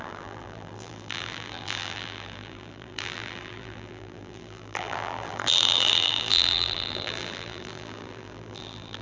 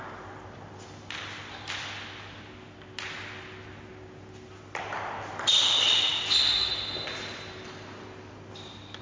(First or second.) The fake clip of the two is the first